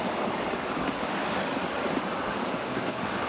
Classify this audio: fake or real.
fake